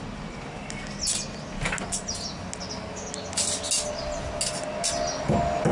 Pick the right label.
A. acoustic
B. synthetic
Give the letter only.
A